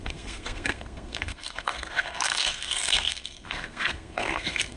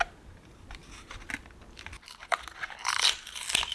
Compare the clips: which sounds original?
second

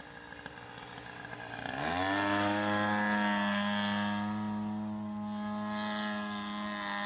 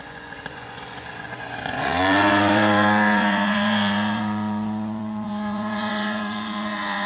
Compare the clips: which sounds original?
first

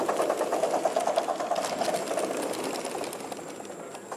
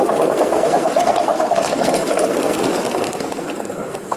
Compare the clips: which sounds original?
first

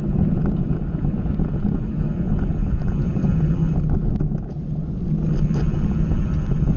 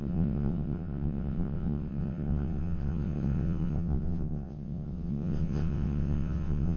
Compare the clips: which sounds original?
first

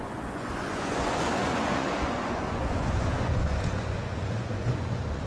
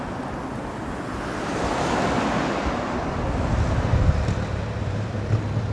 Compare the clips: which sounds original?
second